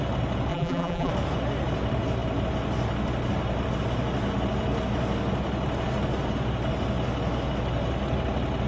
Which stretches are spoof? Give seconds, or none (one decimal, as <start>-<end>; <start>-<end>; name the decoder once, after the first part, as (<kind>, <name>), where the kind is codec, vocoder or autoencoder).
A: 0.5-1.1 (vocoder, BigVGAN v2)